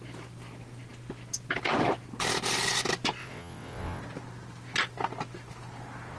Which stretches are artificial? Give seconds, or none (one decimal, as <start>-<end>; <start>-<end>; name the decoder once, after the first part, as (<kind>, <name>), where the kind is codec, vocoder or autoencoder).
3.2-4.0 (vocoder, WaveNeXt)